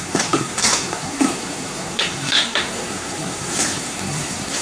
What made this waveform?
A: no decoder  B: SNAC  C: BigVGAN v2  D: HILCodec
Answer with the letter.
B